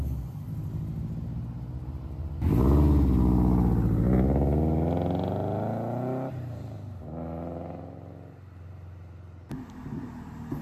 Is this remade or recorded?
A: recorded